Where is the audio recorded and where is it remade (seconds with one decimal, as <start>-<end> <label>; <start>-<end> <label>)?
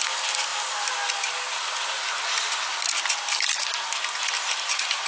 0.0-5.1 recorded